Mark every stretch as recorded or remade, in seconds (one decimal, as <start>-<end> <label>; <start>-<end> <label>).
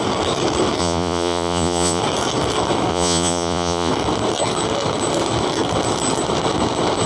0.0-0.8 recorded; 0.8-2.0 remade; 2.0-2.9 recorded; 2.9-3.9 remade; 3.9-7.1 recorded